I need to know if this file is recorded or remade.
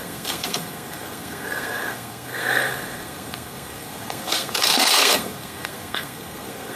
remade